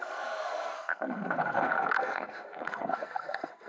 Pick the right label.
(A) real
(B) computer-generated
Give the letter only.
B